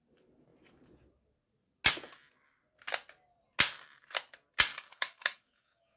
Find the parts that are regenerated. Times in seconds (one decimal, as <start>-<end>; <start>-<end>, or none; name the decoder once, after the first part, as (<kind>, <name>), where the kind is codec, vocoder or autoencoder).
4.7-6.0 (codec, DAC)